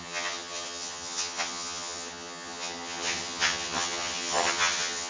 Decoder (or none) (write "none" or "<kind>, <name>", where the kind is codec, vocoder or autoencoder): vocoder, HiFi-GAN